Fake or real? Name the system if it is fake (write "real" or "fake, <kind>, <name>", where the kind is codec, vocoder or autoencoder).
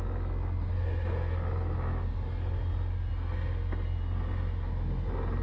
real